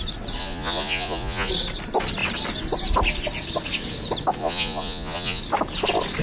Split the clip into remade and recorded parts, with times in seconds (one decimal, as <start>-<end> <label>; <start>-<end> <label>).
0.0-0.4 recorded; 0.4-1.5 remade; 1.5-4.4 recorded; 4.4-5.4 remade; 5.4-6.2 recorded